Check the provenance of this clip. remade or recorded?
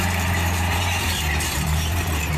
remade